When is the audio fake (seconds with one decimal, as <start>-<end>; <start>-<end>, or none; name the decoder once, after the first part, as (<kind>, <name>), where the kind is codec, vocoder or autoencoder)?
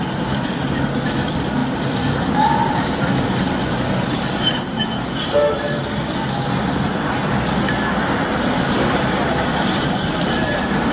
none